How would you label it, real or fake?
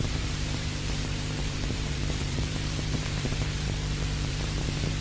fake